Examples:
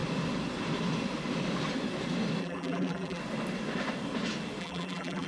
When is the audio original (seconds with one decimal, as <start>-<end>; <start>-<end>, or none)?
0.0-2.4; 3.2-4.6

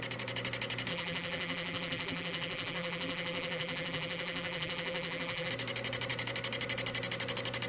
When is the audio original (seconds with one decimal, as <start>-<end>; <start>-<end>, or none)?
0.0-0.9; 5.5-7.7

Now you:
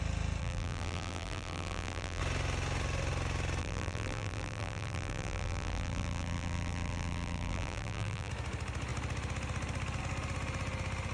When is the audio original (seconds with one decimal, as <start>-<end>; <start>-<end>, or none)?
0.0-0.4; 2.2-3.6; 8.3-11.1

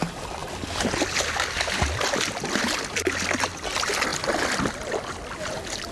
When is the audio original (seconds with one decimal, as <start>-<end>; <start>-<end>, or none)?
0.0-5.9